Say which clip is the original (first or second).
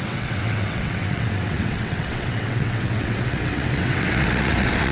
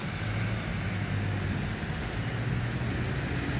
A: second